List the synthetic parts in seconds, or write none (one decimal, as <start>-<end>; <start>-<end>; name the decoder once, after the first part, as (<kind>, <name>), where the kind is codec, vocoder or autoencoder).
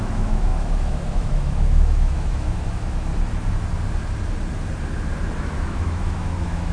0.0-3.1 (autoencoder, DAC-VAE); 5.4-6.7